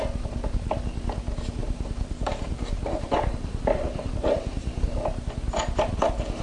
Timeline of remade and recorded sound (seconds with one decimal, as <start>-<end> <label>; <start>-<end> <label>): 0.0-1.6 recorded; 1.6-5.2 remade; 5.2-6.4 recorded